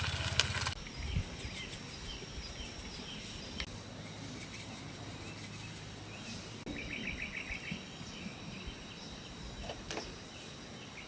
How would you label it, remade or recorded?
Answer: recorded